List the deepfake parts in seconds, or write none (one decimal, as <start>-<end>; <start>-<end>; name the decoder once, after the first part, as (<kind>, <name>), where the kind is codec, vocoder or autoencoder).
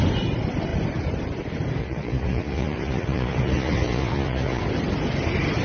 1.8-4.6 (vocoder, Vocos)